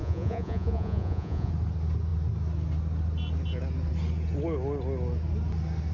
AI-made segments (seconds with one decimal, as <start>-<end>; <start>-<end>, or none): 0.0-1.5